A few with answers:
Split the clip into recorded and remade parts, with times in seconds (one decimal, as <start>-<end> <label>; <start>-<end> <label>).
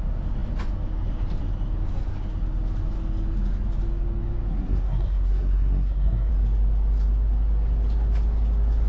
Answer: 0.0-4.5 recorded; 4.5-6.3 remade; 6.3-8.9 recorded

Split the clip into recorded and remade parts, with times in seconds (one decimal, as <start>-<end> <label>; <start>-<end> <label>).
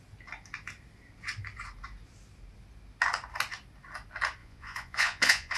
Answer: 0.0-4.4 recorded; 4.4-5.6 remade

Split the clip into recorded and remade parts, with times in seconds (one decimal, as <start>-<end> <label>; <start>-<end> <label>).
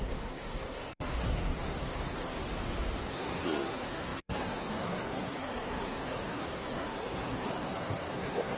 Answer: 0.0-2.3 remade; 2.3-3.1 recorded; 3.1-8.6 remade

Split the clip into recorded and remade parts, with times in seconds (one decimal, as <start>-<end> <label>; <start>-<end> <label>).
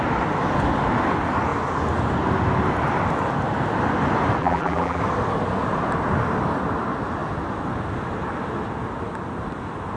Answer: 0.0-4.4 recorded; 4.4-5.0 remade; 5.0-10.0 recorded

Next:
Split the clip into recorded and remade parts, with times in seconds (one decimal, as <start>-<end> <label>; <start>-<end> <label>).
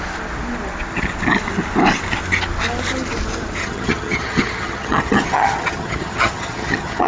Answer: 0.0-3.6 recorded; 3.6-7.1 remade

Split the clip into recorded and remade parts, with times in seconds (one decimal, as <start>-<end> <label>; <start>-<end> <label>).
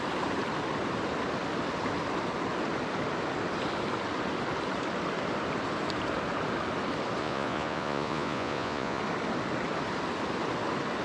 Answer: 0.0-7.2 recorded; 7.2-9.0 remade; 9.0-11.0 recorded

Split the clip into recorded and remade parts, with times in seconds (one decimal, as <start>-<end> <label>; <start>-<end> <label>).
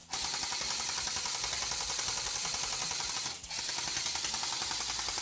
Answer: 0.0-5.2 recorded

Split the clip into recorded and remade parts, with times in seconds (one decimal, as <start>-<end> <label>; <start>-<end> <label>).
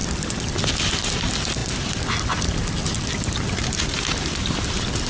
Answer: 0.0-5.1 recorded